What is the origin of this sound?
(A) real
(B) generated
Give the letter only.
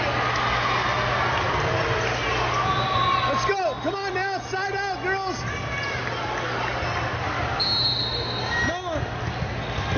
A